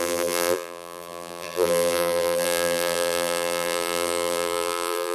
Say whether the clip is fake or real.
fake